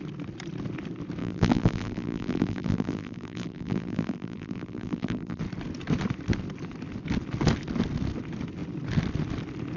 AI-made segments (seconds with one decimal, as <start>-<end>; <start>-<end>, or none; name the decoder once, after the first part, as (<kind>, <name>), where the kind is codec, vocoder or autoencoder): 1.2-5.4 (vocoder, BigVGAN v2)

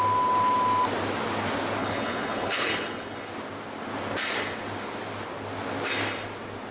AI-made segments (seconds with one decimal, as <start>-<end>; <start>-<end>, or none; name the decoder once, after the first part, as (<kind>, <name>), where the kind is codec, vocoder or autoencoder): 1.8-3.3 (codec, HILCodec)

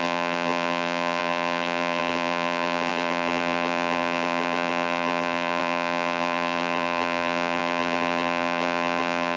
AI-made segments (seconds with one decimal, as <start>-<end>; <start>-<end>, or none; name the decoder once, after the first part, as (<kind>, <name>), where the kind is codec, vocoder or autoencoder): 0.0-9.4 (vocoder, BigVGAN v2)

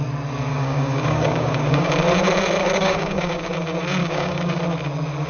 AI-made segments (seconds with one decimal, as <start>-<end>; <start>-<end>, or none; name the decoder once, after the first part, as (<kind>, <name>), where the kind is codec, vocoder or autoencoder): 0.5-1.9 (codec, DAC); 2.6-3.5; 4.0-4.6